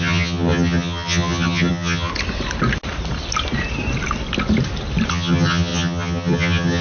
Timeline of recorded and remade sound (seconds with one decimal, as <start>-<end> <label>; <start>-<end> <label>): 0.0-2.1 remade; 2.1-5.1 recorded; 5.1-6.8 remade

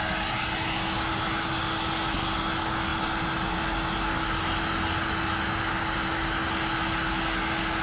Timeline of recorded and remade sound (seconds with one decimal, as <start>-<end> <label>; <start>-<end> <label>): 0.0-7.8 recorded